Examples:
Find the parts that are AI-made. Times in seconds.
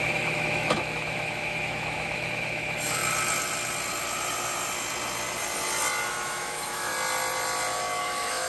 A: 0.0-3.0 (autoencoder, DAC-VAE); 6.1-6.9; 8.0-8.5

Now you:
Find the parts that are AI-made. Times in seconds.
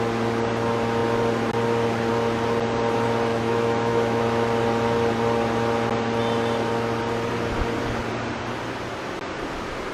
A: 3.3-4.2 (autoencoder, DAC-VAE)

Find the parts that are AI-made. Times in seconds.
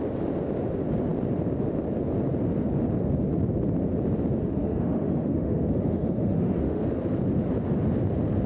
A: 4.4-6.8 (autoencoder, DAC-VAE)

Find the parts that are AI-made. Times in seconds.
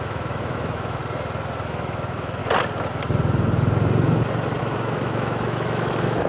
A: 0.0-1.0 (autoencoder, DAC-VAE); 1.7-2.4; 4.6-6.3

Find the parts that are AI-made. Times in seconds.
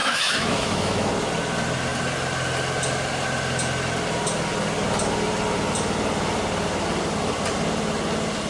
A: 0.0-1.1 (autoencoder, DAC-VAE)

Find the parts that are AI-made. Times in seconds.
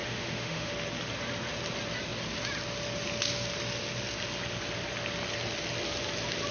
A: 0.0-0.7 (autoencoder, DAC-VAE)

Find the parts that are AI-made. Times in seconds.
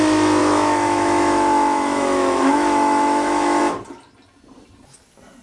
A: 0.4-3.6 (autoencoder, DAC-VAE)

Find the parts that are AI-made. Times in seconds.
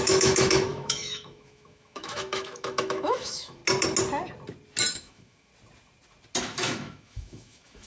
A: 0.0-3.6 (autoencoder, DAC-VAE); 4.9-5.5; 6.4-7.9